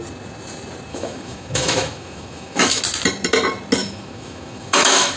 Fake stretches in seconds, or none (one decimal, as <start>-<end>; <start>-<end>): 0.9-2.8; 3.8-5.2

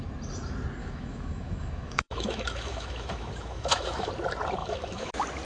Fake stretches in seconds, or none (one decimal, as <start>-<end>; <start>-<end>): 0.8-4.1; 4.6-5.1

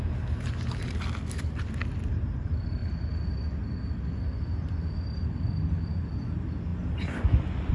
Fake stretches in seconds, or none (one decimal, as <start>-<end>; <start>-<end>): 0.0-2.8; 5.9-6.7

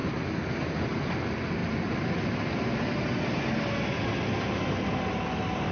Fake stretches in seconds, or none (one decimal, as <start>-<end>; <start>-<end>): none

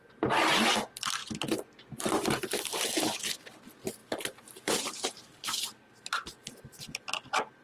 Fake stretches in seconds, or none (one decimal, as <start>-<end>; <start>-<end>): 4.0-7.0

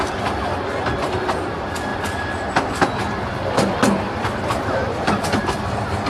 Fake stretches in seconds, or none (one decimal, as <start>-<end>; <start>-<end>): none

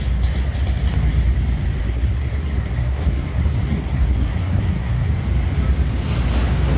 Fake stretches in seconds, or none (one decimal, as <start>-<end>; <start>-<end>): 1.8-5.1